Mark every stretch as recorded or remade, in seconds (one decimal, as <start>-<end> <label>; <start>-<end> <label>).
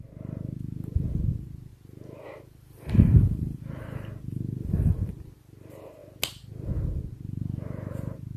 0.0-8.4 recorded